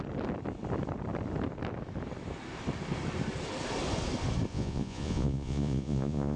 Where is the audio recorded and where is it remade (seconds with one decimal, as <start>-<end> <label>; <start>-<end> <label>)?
0.0-4.5 recorded; 4.5-6.4 remade